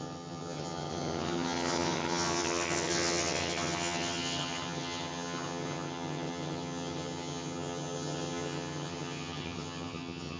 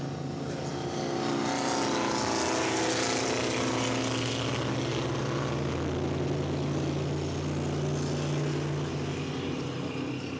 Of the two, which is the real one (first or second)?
second